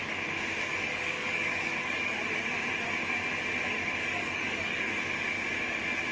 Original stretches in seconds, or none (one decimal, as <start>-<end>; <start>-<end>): 0.0-0.9; 2.2-4.0; 4.9-6.1